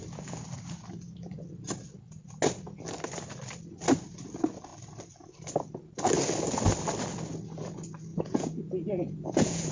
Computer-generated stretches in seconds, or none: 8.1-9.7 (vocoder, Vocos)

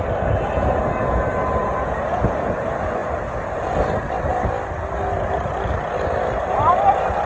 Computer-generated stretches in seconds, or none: 1.6-2.6 (vocoder, Vocos)

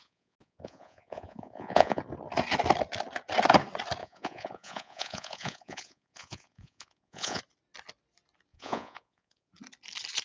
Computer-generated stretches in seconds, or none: 0.0-2.0 (vocoder, Vocos); 4.0-7.4; 8.5-9.5

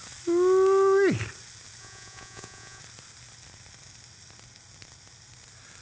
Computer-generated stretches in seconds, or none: 1.8-2.8 (vocoder, Vocos)